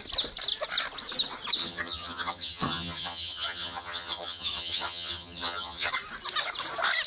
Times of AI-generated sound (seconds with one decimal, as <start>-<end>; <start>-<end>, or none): 1.6-5.9